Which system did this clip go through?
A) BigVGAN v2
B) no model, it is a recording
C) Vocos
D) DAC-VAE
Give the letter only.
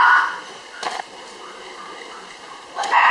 A